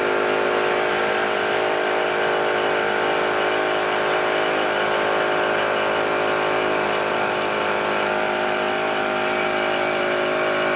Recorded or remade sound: recorded